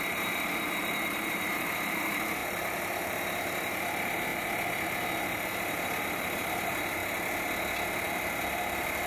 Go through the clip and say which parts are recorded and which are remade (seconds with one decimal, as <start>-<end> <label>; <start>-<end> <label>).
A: 0.0-7.0 remade; 7.0-9.1 recorded